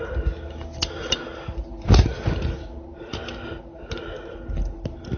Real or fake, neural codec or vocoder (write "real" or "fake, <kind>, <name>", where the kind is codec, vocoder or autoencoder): real